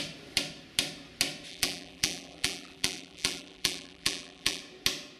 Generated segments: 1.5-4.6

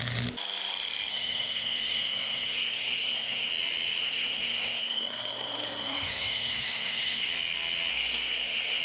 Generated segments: 1.1-3.5; 4.0-7.3; 7.9-8.8

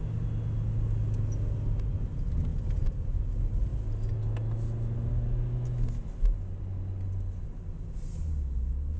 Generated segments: none

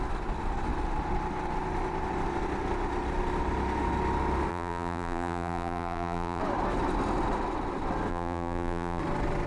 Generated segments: 4.5-6.4; 8.1-9.0

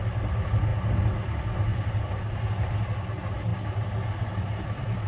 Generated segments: 1.7-2.4

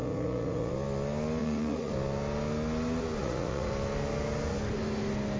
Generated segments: 0.0-0.7; 1.4-1.9; 3.2-3.7

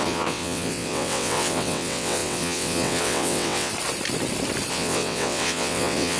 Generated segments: 0.0-3.7; 4.7-6.2